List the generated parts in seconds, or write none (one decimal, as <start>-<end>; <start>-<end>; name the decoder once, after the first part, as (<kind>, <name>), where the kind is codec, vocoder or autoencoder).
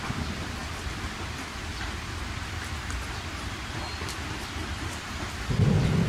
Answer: 0.0-6.1 (vocoder, BigVGAN v2)